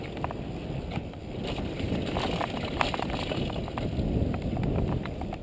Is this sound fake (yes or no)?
no